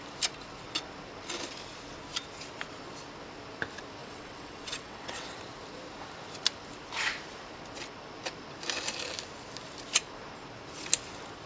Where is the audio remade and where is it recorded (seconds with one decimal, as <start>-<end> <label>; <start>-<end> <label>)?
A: 0.0-4.0 recorded; 4.0-5.4 remade; 5.4-11.5 recorded